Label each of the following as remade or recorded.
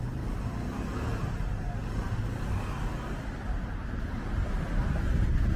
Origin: recorded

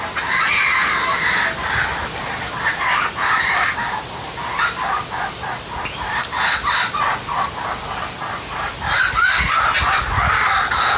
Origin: recorded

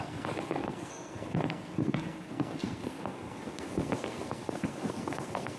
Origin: remade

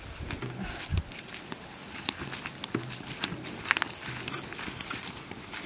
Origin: recorded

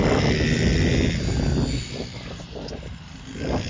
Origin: recorded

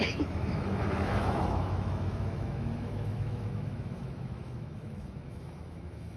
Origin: remade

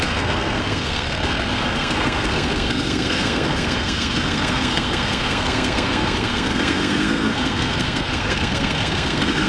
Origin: remade